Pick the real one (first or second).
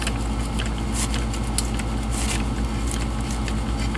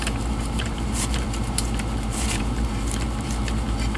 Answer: first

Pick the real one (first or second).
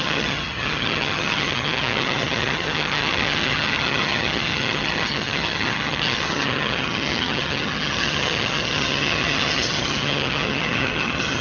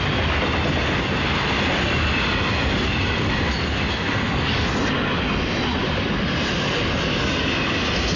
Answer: second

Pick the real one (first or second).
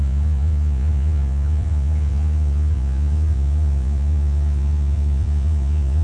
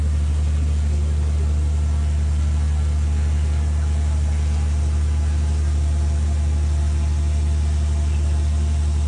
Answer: second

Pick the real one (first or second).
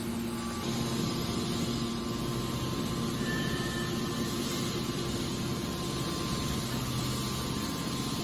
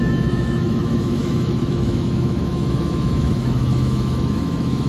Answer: first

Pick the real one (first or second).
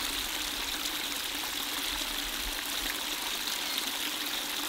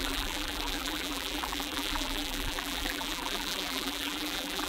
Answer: first